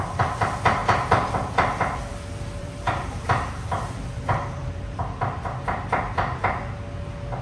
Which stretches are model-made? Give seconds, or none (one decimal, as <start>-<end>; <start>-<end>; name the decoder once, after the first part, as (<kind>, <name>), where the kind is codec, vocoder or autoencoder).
0.8-5.2 (vocoder, BigVGAN v2)